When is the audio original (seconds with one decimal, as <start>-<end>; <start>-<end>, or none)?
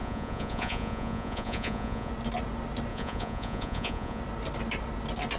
2.1-2.9; 4.2-5.4